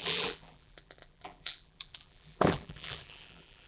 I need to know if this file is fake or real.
fake